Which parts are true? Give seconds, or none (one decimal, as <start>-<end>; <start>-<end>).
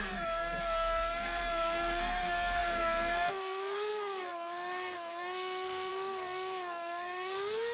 none